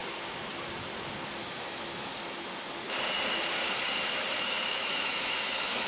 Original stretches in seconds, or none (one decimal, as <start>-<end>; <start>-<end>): 0.0-1.4; 2.1-4.4